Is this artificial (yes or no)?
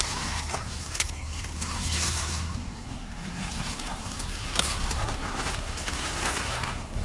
yes